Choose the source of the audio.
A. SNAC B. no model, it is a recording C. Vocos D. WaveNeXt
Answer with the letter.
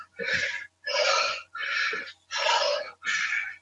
B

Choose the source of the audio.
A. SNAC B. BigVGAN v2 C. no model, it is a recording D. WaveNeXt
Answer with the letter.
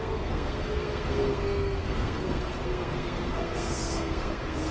A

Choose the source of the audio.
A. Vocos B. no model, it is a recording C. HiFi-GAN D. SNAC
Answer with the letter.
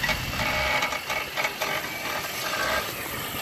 B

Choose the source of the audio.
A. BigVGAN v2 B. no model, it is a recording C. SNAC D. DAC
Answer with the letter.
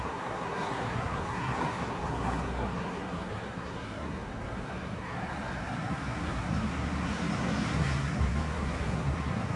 C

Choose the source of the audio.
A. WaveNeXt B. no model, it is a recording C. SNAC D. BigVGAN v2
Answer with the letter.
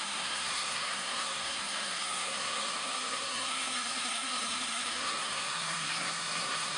C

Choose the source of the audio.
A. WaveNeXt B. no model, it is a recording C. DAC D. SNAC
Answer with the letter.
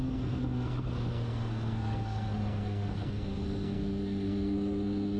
D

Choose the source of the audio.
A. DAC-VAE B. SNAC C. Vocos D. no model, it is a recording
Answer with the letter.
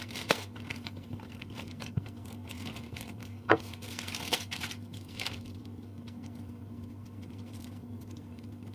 B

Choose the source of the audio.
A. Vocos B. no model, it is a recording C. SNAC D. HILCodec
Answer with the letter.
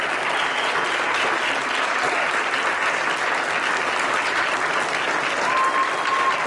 B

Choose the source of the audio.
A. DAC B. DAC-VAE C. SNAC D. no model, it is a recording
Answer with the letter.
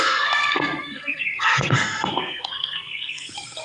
C